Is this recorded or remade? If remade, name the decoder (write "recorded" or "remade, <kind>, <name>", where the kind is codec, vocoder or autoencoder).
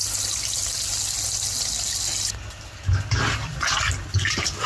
recorded